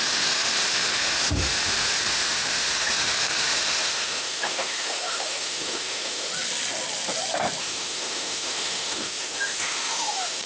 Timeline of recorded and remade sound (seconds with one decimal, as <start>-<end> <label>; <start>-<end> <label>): 0.0-6.3 remade; 6.3-7.6 recorded; 7.6-10.5 remade